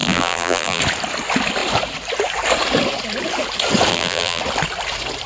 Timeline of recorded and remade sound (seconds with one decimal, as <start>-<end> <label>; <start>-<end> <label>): 0.0-0.8 remade; 0.8-3.9 recorded; 3.9-4.4 remade; 4.4-5.3 recorded